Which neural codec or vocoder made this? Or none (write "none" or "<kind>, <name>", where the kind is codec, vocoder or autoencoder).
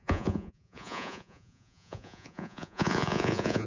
vocoder, Vocos